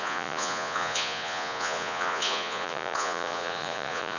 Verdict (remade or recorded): remade